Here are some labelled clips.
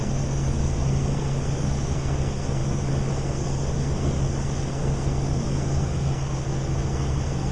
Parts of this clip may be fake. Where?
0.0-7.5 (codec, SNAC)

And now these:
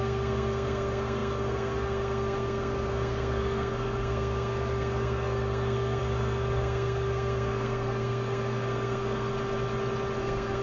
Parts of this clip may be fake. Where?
0.0-9.3 (codec, SNAC); 10.2-10.6

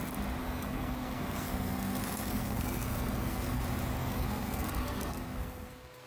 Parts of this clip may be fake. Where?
0.4-3.6 (codec, SNAC); 4.0-6.1

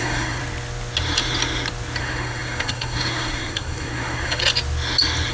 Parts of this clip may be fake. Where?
0.0-0.4 (codec, SNAC); 2.0-4.4

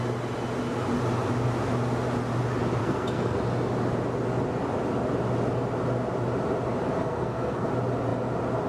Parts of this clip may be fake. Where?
2.8-3.4 (codec, SNAC); 7.0-7.7

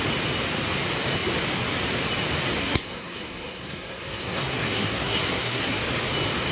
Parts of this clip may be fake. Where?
2.6-5.8 (codec, SNAC)